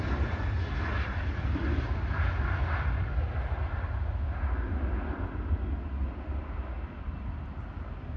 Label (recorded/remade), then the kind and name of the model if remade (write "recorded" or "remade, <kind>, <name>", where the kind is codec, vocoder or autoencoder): recorded